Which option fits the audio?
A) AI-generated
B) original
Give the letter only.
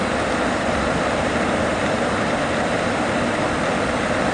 B